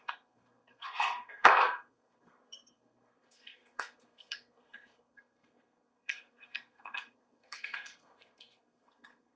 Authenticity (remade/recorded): remade